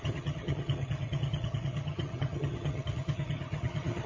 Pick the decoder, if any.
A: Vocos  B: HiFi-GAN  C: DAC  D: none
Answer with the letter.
B